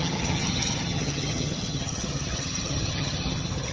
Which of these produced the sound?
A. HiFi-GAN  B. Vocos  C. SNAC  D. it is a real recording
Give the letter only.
A